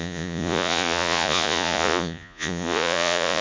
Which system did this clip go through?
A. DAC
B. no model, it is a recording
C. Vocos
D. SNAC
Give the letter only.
C